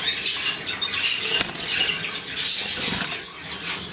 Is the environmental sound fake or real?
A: real